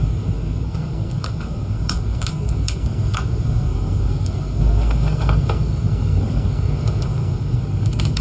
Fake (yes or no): yes